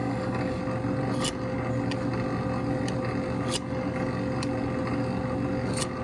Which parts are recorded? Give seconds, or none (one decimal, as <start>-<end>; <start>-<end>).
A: 0.6-6.0